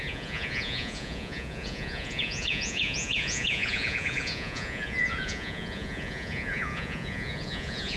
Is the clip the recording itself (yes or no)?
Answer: no